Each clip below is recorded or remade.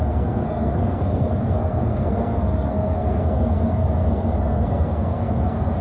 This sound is remade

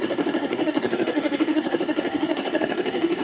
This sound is remade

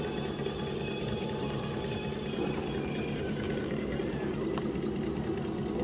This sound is recorded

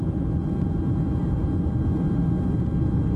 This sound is recorded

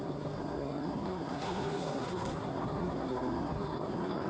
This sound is remade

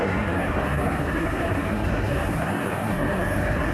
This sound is remade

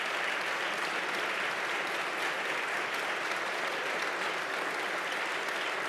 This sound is recorded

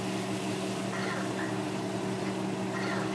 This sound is recorded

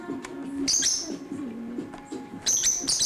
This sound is recorded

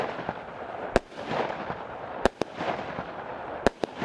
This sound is recorded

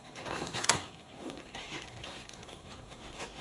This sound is remade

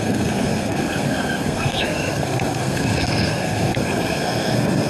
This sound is remade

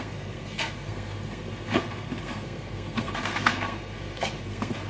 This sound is remade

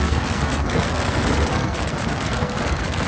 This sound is remade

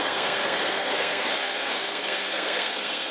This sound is remade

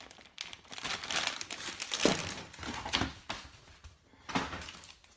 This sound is recorded